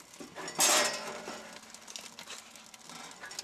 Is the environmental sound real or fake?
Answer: real